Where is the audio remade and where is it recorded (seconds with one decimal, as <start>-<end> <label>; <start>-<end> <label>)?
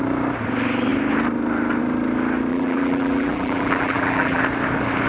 0.0-2.5 recorded; 2.5-4.4 remade; 4.4-5.1 recorded